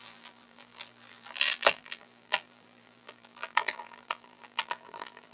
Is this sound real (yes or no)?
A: no